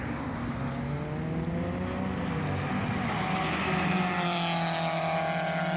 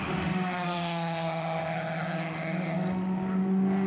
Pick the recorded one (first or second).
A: first